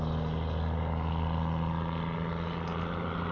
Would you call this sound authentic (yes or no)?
yes